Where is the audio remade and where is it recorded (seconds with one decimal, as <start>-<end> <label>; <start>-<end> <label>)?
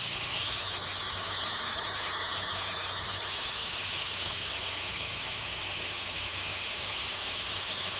0.0-8.0 remade